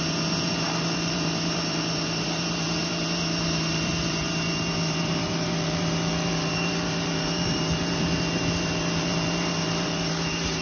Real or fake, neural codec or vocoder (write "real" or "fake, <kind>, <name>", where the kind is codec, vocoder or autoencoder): fake, vocoder, BigVGAN v2